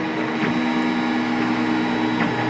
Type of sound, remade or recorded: recorded